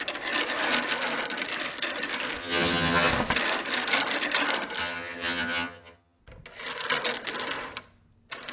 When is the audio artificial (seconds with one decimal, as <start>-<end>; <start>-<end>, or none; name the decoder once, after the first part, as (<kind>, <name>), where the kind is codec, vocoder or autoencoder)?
2.4-3.1 (vocoder, HiFi-GAN); 4.8-6.2